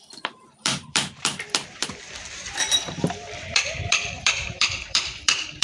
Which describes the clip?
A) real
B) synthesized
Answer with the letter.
B